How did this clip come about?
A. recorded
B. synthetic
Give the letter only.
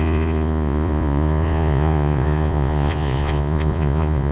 B